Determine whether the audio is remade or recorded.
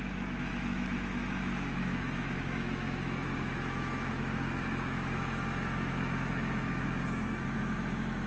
remade